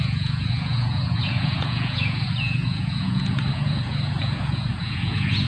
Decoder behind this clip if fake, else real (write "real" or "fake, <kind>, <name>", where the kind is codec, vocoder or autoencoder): fake, vocoder, Vocos